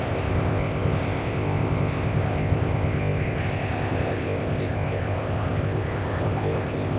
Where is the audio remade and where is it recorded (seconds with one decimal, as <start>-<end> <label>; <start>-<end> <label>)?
0.0-7.0 remade